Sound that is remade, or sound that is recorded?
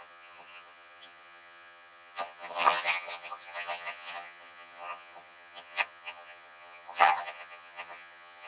remade